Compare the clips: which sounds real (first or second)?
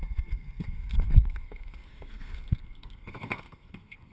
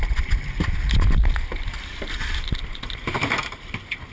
second